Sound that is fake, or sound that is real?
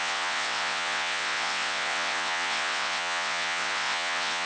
fake